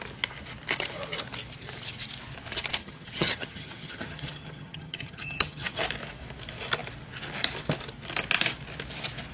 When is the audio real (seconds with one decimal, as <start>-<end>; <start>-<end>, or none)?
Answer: 0.0-2.8; 5.8-9.3